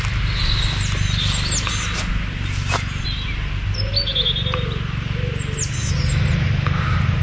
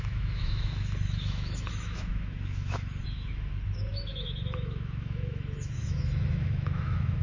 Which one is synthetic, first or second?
second